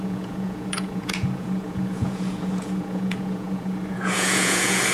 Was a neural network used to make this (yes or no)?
yes